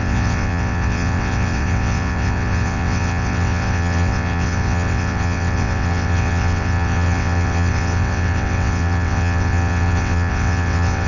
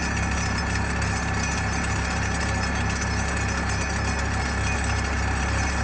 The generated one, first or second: first